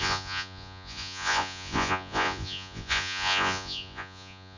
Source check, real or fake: fake